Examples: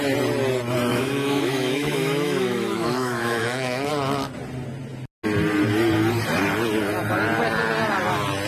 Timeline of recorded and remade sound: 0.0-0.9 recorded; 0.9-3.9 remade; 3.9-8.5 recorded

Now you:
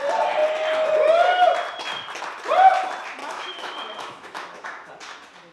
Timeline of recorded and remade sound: 0.0-3.2 recorded; 3.2-4.9 remade; 4.9-5.5 recorded

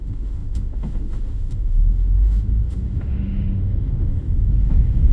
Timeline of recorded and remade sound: 0.0-5.1 remade

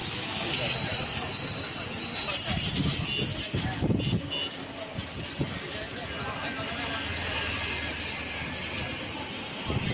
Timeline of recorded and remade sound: 0.0-0.5 remade; 0.5-9.9 recorded

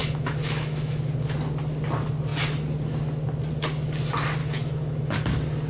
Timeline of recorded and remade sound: 0.0-1.1 remade; 1.1-4.4 recorded; 4.4-5.1 remade; 5.1-5.7 recorded

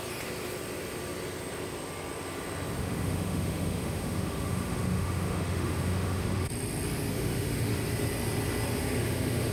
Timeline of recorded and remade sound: 0.0-2.8 recorded; 2.8-6.5 remade; 6.5-7.1 recorded; 7.1-7.7 remade; 7.7-8.8 recorded; 8.8-9.5 remade

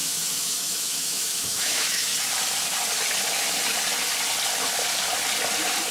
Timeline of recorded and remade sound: 0.0-2.1 remade; 2.1-5.9 recorded